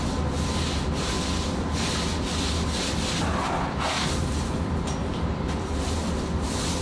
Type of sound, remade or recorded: recorded